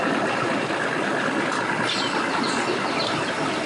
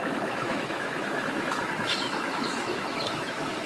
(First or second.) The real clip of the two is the first